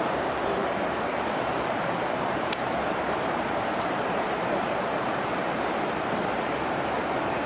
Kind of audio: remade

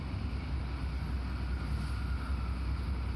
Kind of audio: recorded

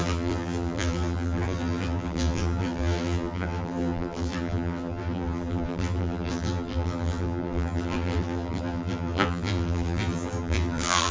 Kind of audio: remade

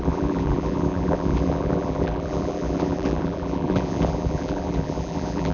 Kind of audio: remade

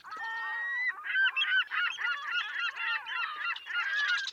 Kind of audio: recorded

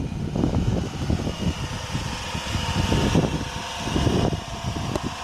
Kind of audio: remade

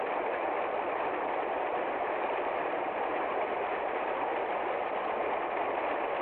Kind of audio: recorded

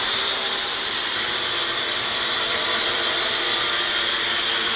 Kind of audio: remade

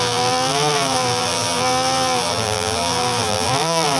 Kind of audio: remade